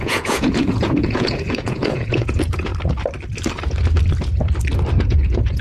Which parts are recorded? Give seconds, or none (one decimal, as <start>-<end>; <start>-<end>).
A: 2.7-5.0